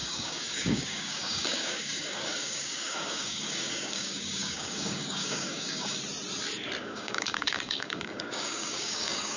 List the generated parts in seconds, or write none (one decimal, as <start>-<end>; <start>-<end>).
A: 0.0-6.0; 6.8-9.4